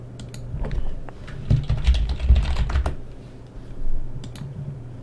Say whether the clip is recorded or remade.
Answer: recorded